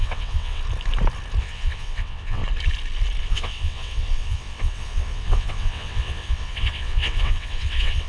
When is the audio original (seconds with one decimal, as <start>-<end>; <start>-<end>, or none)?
0.6-1.4; 2.4-3.2